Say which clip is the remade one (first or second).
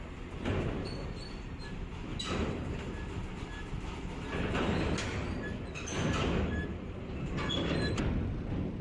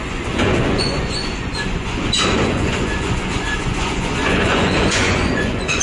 second